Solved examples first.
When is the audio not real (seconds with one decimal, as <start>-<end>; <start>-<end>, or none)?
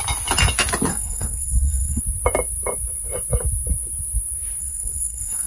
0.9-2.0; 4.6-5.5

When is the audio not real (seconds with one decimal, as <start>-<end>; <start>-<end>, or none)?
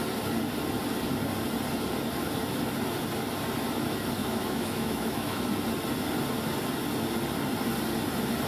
4.2-5.4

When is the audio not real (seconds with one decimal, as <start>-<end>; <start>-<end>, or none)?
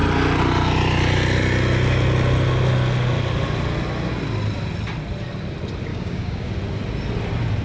5.9-6.5